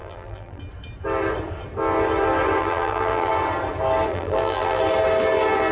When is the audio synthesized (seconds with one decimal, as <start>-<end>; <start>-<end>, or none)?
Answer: 0.0-0.6; 2.6-3.3; 4.1-4.8